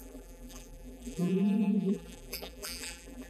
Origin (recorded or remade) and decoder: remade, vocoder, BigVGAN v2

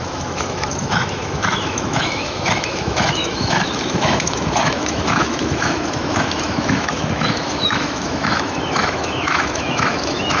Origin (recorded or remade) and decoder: remade, autoencoder, DAC-VAE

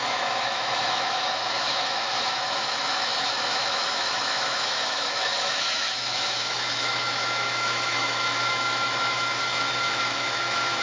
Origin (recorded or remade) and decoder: remade, autoencoder, DAC-VAE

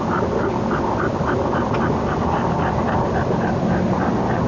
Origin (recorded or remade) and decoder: recorded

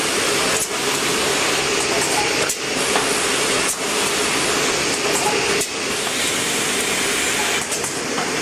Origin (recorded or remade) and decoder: recorded